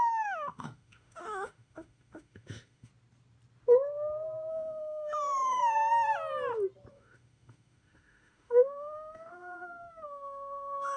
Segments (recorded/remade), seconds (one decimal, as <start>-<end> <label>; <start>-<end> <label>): 0.0-2.9 remade; 2.9-4.5 recorded; 4.5-5.6 remade; 5.6-6.9 recorded; 6.9-11.0 remade